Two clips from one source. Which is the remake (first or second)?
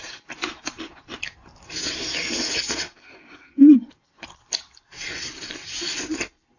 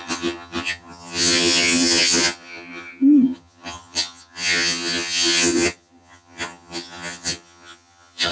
second